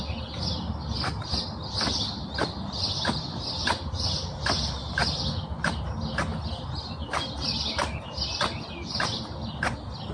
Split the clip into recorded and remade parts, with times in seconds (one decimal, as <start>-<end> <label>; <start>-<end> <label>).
0.0-10.1 recorded